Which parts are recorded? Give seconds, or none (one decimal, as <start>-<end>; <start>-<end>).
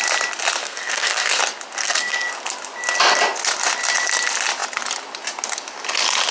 0.0-0.6; 1.4-1.8; 2.3-6.3